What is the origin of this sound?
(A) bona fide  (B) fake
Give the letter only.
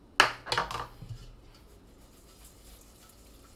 A